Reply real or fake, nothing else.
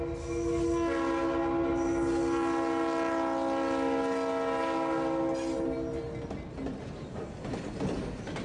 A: real